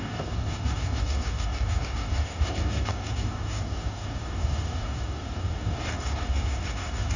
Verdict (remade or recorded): remade